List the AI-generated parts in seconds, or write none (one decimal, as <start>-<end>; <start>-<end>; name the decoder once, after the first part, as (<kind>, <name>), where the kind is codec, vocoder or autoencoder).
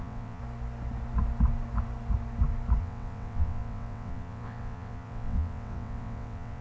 0.0-0.4 (vocoder, WaveNeXt); 2.8-6.6